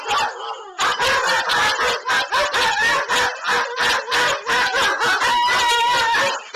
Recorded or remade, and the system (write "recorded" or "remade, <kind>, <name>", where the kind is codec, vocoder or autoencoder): recorded